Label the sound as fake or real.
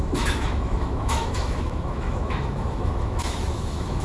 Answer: fake